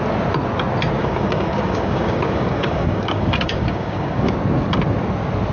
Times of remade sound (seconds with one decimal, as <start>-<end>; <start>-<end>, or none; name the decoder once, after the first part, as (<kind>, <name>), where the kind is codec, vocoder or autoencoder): 1.0-4.3 (codec, DAC)